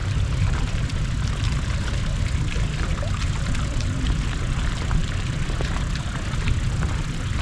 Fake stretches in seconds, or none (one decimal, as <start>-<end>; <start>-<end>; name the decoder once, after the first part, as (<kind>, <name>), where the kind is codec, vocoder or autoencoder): none

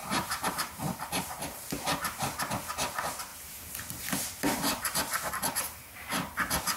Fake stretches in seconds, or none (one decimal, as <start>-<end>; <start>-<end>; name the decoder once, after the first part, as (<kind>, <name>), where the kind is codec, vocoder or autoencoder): 0.0-2.4 (vocoder, BigVGAN v2); 3.3-5.3

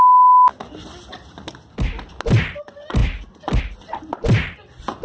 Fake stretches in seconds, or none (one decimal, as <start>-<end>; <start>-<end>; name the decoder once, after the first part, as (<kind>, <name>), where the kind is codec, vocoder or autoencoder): none